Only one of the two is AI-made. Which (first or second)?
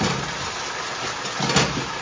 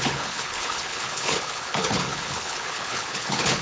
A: second